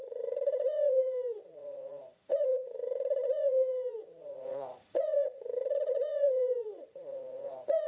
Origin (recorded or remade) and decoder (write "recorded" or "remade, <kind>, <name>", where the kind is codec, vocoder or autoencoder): remade, vocoder, Vocos